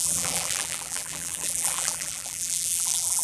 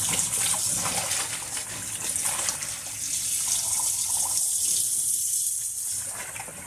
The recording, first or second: second